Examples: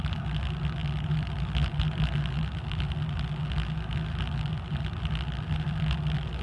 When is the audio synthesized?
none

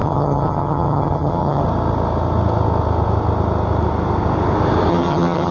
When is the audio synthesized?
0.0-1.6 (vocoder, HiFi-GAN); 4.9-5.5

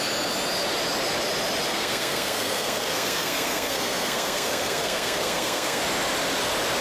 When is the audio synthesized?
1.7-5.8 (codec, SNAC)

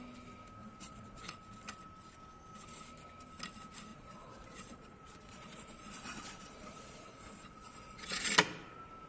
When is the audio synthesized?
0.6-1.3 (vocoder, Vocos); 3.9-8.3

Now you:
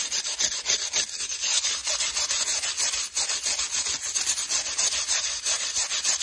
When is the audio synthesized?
none